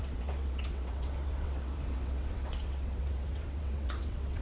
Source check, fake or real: fake